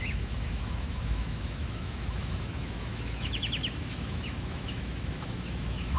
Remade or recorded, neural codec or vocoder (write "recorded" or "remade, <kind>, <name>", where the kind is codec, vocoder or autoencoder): remade, autoencoder, DAC-VAE